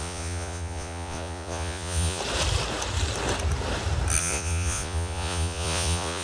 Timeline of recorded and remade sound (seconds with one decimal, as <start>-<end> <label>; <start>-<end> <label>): 0.0-2.2 remade; 2.2-4.2 recorded; 4.2-6.2 remade